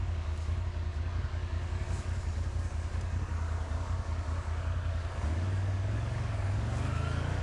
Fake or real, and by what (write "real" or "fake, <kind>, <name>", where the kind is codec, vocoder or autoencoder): fake, codec, DAC